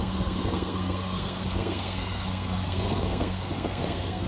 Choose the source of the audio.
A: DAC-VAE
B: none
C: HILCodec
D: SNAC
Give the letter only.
D